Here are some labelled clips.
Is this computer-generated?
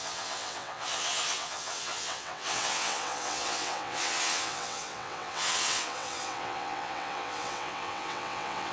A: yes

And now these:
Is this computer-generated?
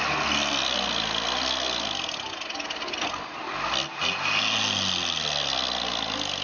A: no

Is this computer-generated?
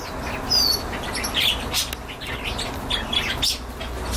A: no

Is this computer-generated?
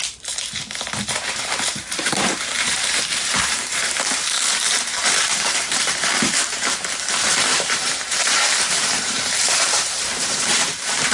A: yes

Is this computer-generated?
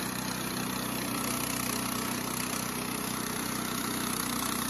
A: no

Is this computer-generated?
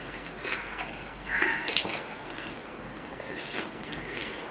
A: yes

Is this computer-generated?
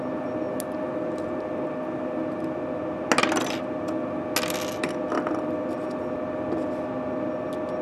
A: no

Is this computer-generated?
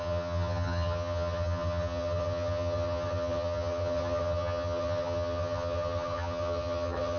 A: yes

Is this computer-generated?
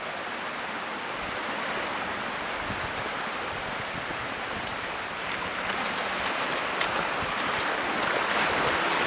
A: no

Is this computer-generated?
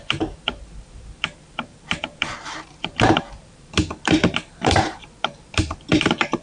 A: yes